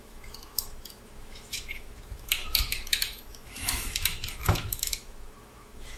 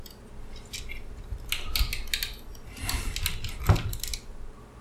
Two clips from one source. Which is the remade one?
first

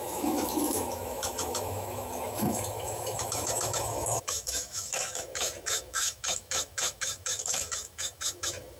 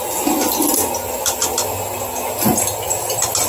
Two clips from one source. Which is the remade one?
first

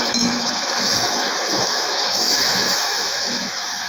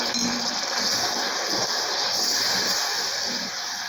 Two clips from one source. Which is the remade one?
first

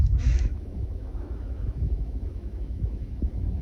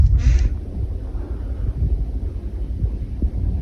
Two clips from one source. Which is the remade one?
first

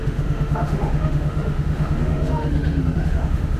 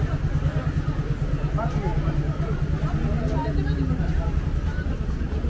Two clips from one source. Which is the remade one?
first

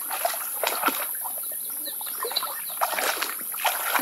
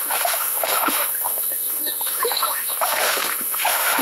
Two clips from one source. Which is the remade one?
second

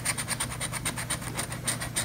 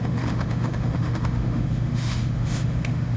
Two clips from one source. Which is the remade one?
second